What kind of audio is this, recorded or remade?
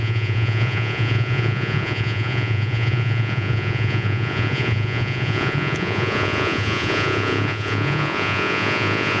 remade